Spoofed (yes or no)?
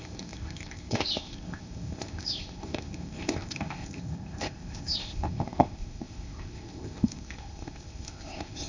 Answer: yes